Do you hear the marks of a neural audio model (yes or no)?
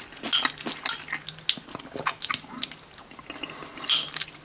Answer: no